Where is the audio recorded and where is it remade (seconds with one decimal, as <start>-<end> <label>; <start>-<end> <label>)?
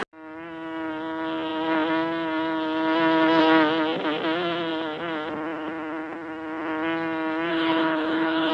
0.0-7.5 recorded; 7.5-8.5 remade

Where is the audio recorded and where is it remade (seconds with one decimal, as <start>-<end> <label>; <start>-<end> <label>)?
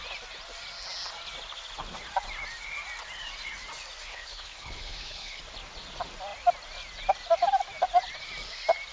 0.0-4.1 recorded; 4.1-5.4 remade; 5.4-8.9 recorded